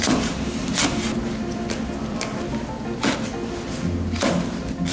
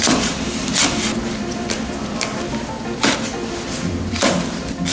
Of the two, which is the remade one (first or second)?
second